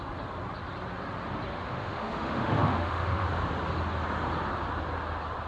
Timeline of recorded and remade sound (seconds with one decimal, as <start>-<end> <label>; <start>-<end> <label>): 0.0-1.5 recorded; 1.5-3.3 remade; 3.3-5.5 recorded